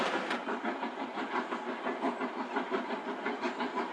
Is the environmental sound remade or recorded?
remade